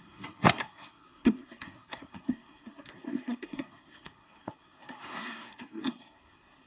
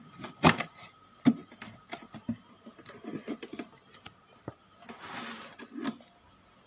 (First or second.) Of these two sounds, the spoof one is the first